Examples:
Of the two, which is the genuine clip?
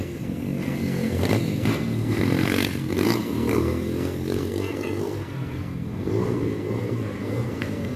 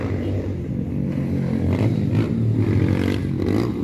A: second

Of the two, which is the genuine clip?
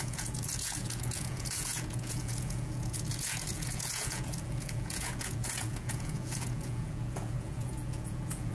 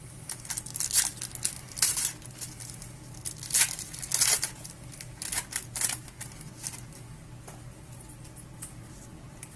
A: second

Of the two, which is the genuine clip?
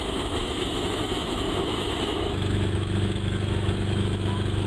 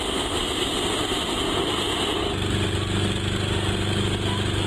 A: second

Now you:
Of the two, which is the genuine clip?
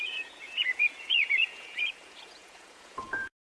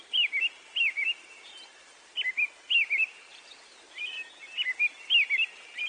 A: second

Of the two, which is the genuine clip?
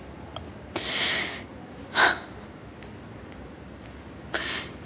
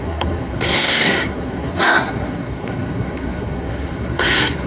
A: first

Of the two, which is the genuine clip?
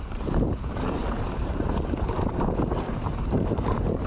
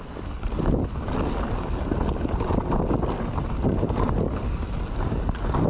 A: second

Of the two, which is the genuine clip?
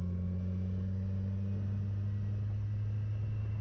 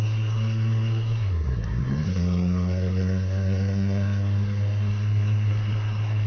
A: first